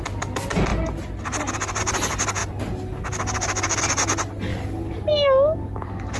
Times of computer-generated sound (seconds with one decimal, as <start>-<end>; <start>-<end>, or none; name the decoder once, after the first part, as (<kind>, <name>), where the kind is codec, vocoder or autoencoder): 4.5-5.1 (vocoder, BigVGAN v2)